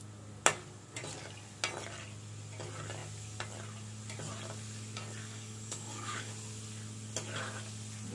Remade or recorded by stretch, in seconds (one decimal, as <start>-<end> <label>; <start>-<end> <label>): 0.0-5.2 recorded; 5.2-6.3 remade; 6.3-8.1 recorded